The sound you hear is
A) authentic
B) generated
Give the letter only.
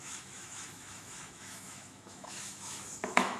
B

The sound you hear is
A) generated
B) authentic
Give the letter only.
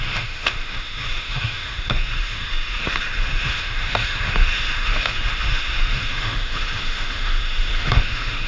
A